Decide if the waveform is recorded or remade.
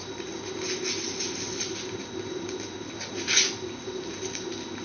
recorded